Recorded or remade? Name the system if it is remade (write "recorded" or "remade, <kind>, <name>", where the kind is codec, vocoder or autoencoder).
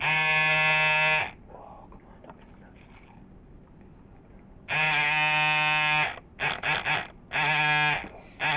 recorded